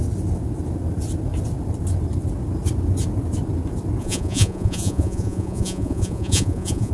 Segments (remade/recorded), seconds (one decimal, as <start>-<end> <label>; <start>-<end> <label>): 0.0-4.0 recorded; 4.0-6.9 remade